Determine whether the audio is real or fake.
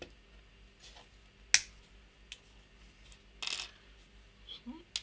real